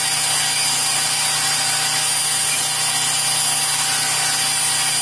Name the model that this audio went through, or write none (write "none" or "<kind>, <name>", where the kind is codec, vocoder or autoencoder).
none